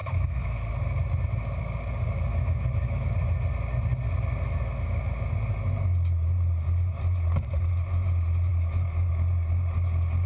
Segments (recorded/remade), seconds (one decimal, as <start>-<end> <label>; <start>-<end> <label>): 0.0-0.7 remade; 0.7-2.3 recorded; 2.3-3.1 remade; 3.1-8.5 recorded; 8.5-9.1 remade; 9.1-10.3 recorded